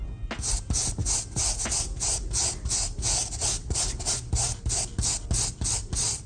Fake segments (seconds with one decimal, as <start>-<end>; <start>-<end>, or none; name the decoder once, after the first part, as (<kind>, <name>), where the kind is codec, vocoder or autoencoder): none